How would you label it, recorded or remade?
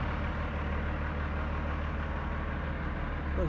recorded